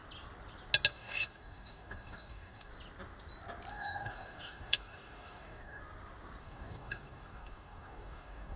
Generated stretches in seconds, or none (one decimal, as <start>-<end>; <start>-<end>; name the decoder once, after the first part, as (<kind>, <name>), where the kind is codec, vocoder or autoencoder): 0.9-2.7 (codec, DAC); 3.7-5.8; 6.4-8.6